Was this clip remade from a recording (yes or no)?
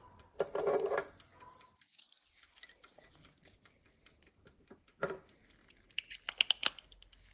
no